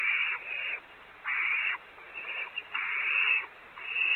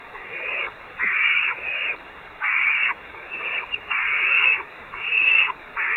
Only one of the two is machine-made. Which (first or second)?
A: second